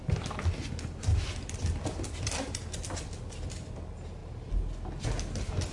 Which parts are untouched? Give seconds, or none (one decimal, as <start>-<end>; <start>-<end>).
0.0-1.1; 3.7-5.7